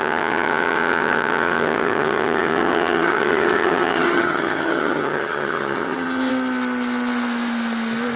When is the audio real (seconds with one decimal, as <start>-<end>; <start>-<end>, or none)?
6.3-8.2